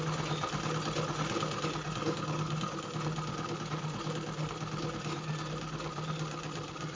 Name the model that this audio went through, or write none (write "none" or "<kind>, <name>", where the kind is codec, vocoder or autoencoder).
none